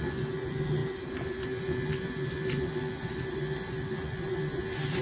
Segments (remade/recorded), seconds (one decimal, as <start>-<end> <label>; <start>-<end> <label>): 0.0-5.0 recorded